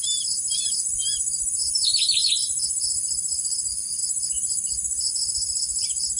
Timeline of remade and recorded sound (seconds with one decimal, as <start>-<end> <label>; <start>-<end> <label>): 0.0-6.2 recorded